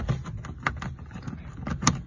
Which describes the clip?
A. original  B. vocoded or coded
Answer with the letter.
A